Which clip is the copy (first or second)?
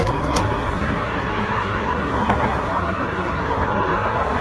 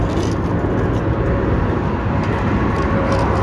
first